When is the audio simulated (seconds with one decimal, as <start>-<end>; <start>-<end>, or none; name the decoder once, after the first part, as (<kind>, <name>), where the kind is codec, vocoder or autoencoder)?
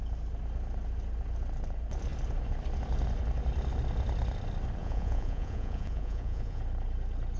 4.8-6.6 (vocoder, Vocos)